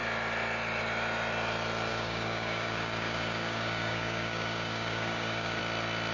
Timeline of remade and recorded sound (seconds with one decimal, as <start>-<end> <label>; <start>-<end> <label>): 0.0-1.9 recorded; 1.9-5.6 remade; 5.6-6.1 recorded